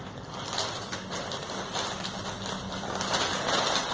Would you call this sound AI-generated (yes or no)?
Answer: no